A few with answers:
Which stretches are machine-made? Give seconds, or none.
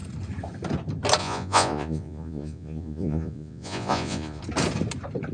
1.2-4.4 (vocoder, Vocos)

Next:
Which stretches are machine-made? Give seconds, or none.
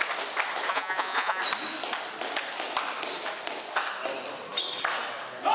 0.7-1.4 (vocoder, Vocos)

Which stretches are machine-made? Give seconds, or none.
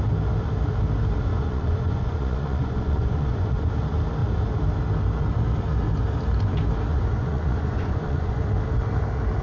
1.3-3.7 (vocoder, Vocos); 6.9-8.4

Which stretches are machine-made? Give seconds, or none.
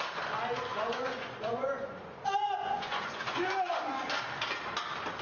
0.7-3.8 (vocoder, Vocos)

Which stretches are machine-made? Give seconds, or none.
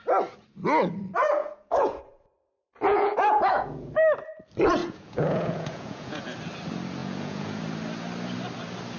1.4-2.0 (vocoder, Vocos); 2.9-3.9; 4.8-6.2; 7.0-7.6